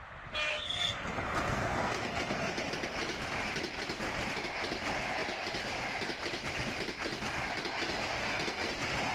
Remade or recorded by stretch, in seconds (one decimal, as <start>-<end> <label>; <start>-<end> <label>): 0.0-0.5 recorded; 0.5-2.5 remade; 2.5-8.2 recorded; 8.2-8.7 remade; 8.7-9.1 recorded